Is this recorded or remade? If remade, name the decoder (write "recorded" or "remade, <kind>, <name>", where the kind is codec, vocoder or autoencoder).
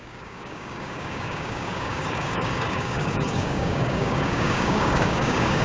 remade, codec, DAC